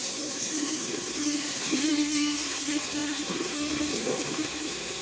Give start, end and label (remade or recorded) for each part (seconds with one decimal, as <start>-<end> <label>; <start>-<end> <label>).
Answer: 0.0-5.0 remade